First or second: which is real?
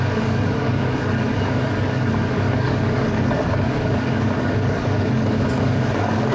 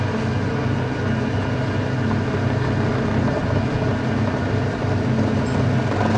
second